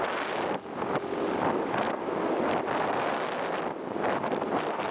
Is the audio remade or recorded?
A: recorded